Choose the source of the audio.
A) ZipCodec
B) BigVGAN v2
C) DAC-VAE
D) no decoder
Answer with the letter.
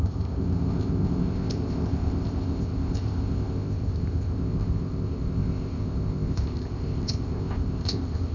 A